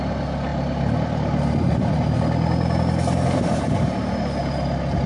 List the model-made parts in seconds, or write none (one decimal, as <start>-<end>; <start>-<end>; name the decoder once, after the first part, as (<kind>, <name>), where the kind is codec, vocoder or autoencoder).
none